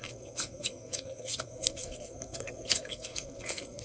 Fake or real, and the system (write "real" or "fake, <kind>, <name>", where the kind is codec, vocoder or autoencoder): fake, codec, SNAC